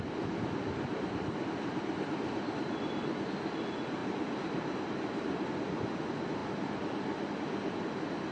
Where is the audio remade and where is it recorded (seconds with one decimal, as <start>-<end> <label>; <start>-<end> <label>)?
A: 0.0-4.0 recorded; 4.0-5.5 remade; 5.5-8.3 recorded